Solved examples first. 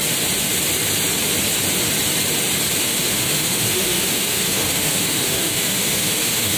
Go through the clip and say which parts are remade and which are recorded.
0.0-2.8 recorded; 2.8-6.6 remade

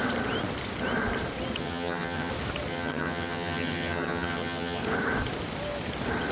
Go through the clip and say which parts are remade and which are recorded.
0.0-1.6 recorded; 1.6-2.3 remade; 2.3-2.7 recorded; 2.7-4.8 remade; 4.8-6.3 recorded